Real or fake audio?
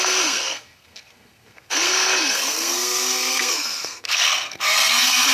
fake